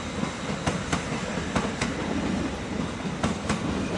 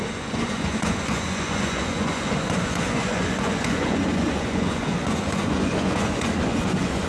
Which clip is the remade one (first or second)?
second